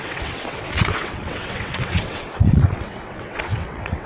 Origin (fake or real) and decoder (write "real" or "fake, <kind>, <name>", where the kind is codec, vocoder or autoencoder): fake, vocoder, WaveNeXt